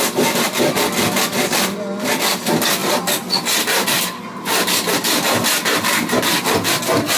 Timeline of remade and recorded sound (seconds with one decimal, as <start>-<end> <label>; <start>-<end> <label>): 0.0-7.2 recorded